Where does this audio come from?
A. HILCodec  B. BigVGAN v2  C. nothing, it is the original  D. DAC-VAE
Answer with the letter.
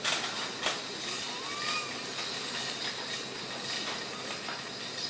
C